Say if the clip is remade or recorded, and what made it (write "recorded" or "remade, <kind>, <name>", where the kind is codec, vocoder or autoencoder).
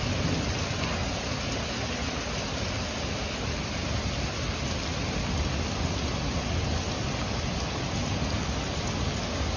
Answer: recorded